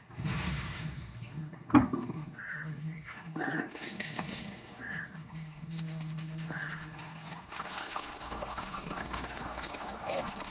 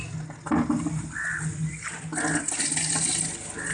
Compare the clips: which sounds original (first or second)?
second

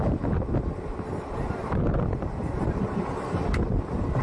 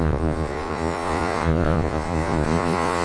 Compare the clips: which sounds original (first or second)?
first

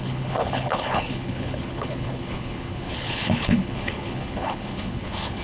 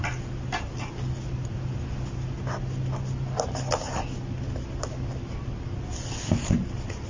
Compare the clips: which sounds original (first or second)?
second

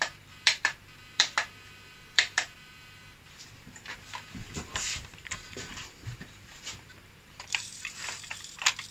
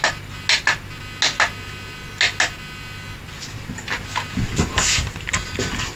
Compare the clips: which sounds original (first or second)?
second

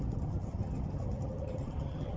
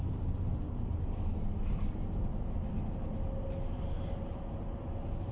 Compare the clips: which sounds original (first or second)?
second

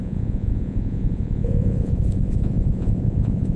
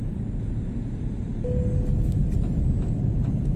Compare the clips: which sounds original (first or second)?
second